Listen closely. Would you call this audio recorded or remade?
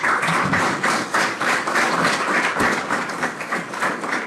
remade